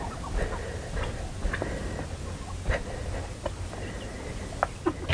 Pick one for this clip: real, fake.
real